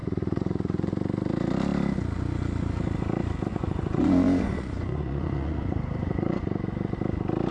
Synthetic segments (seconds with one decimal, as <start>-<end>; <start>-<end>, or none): 0.0-0.9; 3.5-6.4